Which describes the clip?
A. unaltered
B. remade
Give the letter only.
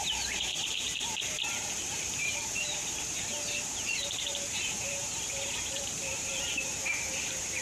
B